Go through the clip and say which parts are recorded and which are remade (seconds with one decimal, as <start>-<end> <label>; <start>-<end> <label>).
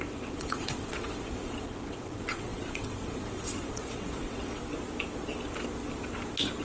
0.0-4.6 remade; 4.6-6.6 recorded